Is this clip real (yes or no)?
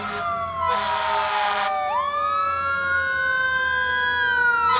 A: yes